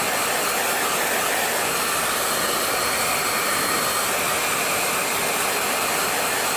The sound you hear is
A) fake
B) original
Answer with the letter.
B